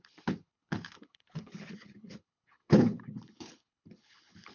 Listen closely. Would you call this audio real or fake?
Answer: fake